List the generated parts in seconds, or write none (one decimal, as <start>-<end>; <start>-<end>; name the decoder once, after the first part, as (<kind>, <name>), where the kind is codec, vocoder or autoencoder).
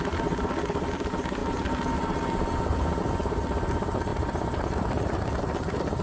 none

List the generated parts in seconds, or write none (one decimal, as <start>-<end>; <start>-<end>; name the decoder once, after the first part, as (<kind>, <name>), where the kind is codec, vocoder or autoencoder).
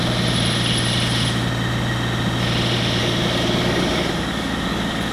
3.0-5.1 (codec, DAC)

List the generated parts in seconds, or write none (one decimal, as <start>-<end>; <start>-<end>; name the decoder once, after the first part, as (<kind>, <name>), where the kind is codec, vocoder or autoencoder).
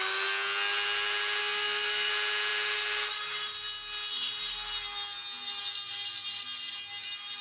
1.4-2.1 (codec, SNAC)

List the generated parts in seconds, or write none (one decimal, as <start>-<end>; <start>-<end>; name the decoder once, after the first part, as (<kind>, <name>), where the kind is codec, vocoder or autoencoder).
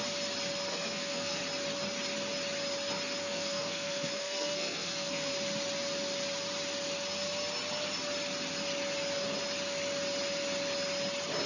0.7-1.4 (codec, SNAC); 3.2-5.3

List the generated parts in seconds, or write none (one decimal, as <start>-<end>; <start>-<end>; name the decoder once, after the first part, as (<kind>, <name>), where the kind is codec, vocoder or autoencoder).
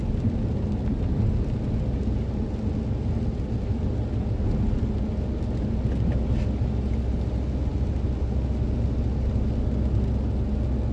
none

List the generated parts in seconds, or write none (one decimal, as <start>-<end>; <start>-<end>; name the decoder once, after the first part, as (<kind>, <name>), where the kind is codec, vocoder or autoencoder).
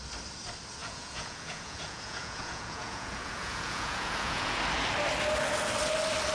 0.8-4.6 (vocoder, Vocos)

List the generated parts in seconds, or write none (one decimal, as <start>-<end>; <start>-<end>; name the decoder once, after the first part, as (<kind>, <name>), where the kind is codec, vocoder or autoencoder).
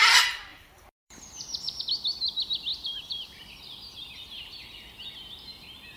0.5-1.8 (vocoder, BigVGAN v2); 2.7-4.4